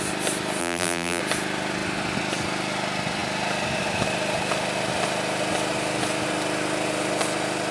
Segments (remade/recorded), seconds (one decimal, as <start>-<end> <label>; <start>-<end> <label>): 0.0-0.6 recorded; 0.6-1.2 remade; 1.2-7.7 recorded